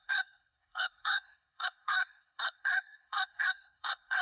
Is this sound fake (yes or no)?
yes